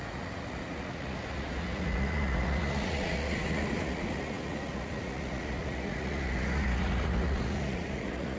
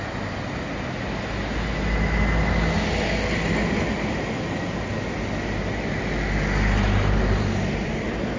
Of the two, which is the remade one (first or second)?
first